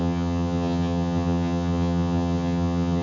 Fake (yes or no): yes